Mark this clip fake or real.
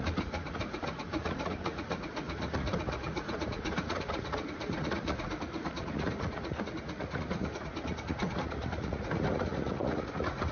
fake